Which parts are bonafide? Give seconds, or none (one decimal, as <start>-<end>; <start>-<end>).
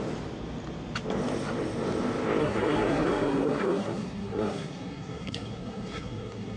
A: 0.0-2.4